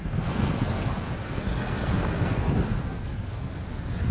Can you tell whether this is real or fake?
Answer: fake